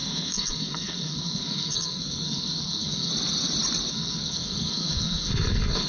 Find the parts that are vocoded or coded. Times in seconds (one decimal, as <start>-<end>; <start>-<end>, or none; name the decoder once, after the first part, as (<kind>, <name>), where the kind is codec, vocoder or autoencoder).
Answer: 0.0-3.1 (codec, SNAC); 3.9-5.9